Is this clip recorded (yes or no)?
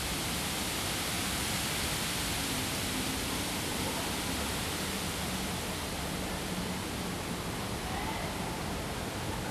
yes